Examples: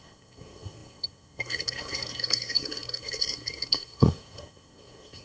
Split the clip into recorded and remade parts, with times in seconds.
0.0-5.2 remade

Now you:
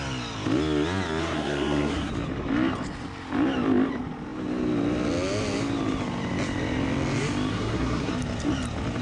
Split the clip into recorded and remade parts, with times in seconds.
0.0-1.2 recorded; 1.2-2.1 remade; 2.1-7.5 recorded; 7.5-8.1 remade; 8.1-9.0 recorded

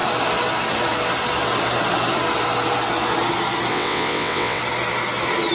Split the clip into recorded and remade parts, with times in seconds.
0.0-3.7 recorded; 3.7-4.6 remade; 4.6-5.5 recorded

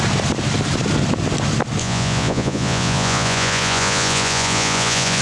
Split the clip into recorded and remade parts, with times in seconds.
0.0-1.8 recorded; 1.8-5.2 remade

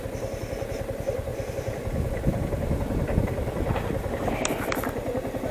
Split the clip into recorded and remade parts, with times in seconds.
0.0-1.3 recorded; 1.3-4.6 remade; 4.6-5.5 recorded

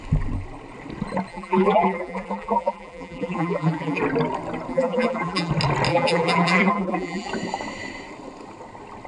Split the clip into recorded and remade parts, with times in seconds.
0.0-1.3 recorded; 1.3-4.0 remade; 4.0-4.7 recorded; 4.7-5.5 remade; 5.5-5.9 recorded; 5.9-7.3 remade; 7.3-9.1 recorded

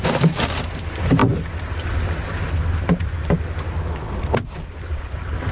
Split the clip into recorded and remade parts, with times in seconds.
0.0-5.5 recorded